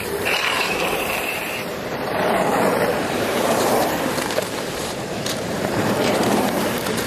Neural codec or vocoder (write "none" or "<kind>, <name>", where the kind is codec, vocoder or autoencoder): vocoder, BigVGAN v2